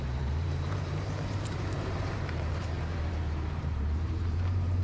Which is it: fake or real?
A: fake